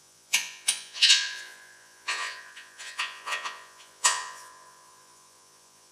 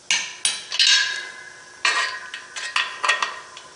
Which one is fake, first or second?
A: first